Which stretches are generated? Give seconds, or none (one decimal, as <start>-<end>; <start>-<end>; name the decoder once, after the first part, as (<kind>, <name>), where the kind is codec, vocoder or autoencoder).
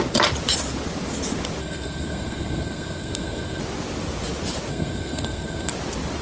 1.6-3.6 (codec, SNAC); 4.7-5.7